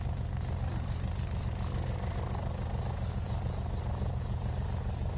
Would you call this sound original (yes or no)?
yes